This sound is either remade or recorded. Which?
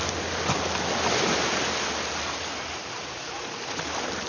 recorded